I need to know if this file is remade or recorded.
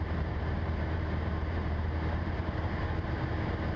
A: remade